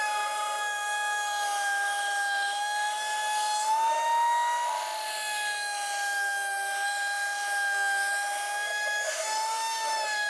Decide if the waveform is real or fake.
fake